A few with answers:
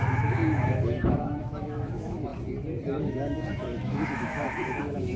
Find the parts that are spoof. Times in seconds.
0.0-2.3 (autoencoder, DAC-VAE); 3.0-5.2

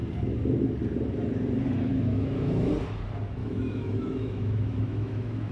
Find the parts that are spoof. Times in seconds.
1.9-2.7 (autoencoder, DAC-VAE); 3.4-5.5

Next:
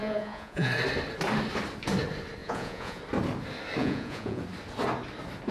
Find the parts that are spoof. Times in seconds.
0.0-0.7 (vocoder, Vocos); 2.4-3.0; 3.8-4.4

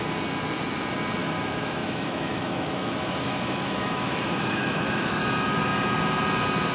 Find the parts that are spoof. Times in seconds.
1.2-5.2 (autoencoder, DAC-VAE)